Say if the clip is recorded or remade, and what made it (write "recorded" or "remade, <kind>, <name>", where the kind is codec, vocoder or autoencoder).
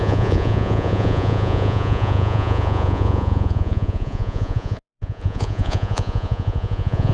remade, vocoder, Vocos